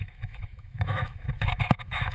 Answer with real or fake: fake